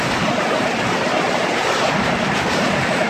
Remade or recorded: remade